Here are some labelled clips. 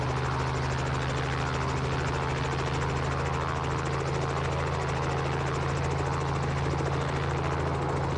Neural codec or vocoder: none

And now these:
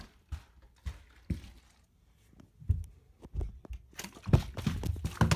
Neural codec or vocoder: none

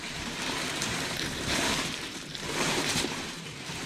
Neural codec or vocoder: vocoder, BigVGAN v2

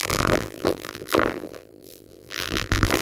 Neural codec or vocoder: vocoder, BigVGAN v2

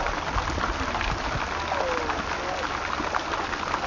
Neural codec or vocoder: none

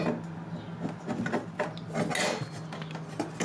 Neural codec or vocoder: none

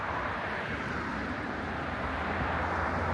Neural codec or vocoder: vocoder, BigVGAN v2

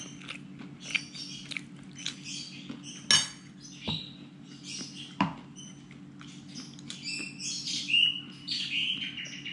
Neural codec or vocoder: none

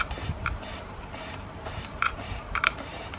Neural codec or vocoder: vocoder, BigVGAN v2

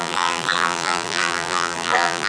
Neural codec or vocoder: vocoder, BigVGAN v2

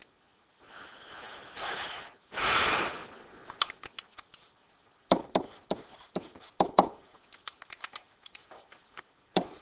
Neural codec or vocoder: none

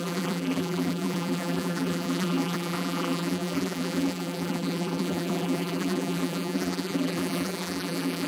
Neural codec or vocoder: vocoder, BigVGAN v2